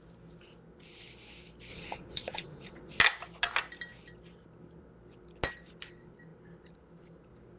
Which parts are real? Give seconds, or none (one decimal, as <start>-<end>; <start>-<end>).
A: 0.0-1.7; 3.0-7.6